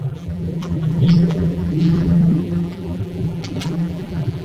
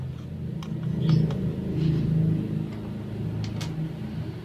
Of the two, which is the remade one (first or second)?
first